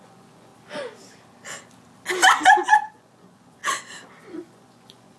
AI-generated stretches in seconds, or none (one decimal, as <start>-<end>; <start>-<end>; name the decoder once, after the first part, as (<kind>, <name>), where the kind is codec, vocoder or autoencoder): 0.0-0.5 (vocoder, Vocos); 2.9-3.6; 4.2-5.2